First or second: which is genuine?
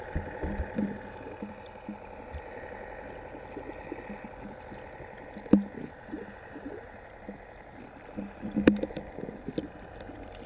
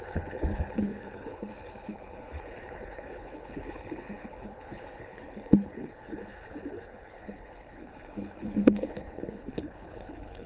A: first